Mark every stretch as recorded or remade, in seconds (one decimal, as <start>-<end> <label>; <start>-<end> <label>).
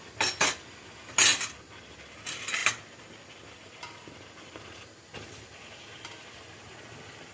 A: 0.0-7.3 recorded